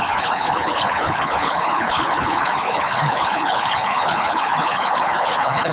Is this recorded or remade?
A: remade